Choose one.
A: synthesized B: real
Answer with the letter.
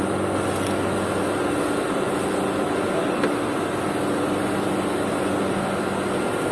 B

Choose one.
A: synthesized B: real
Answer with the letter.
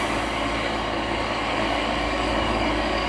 A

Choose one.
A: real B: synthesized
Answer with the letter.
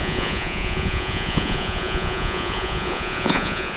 B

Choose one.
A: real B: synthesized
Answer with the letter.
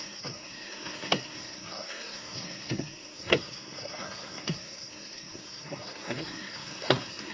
B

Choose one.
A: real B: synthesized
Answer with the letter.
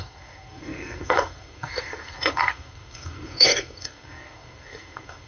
B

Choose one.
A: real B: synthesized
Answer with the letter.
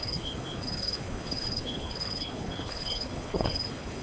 B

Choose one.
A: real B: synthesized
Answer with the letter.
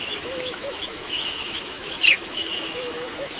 B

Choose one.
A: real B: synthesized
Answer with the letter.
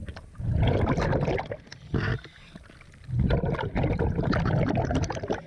A